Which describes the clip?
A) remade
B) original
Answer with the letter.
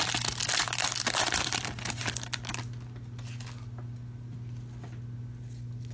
B